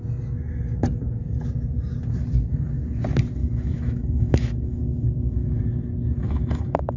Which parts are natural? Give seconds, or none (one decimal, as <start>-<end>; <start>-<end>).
0.0-3.4; 5.6-6.2